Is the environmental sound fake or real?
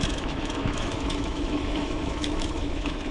fake